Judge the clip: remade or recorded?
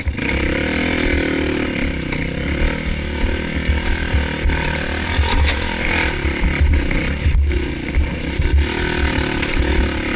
recorded